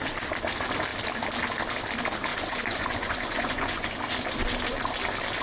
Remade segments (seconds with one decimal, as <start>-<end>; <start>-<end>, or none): 2.3-3.9